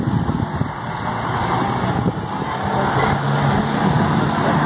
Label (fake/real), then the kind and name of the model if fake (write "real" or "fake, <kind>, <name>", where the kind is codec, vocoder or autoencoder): real